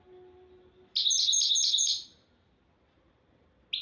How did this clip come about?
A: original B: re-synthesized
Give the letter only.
A